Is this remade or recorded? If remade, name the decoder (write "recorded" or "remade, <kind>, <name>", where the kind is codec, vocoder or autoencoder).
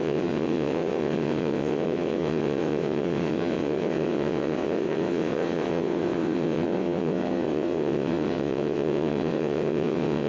remade, vocoder, WaveNeXt